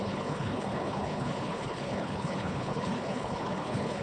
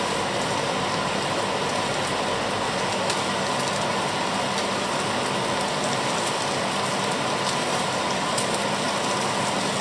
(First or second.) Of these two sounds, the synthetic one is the first